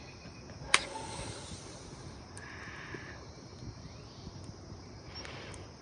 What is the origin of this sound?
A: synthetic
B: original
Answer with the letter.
B